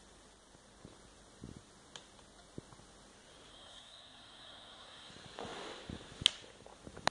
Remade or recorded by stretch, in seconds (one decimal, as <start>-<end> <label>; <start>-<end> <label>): 0.0-3.5 recorded; 3.5-5.1 remade; 5.1-7.1 recorded